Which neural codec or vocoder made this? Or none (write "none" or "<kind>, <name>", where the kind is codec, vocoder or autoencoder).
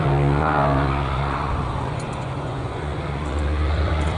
vocoder, Vocos